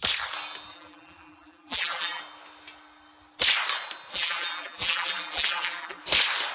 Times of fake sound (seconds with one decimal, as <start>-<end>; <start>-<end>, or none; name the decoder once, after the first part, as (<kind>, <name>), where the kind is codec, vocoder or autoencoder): 0.7-2.2 (vocoder, BigVGAN v2); 4.1-6.0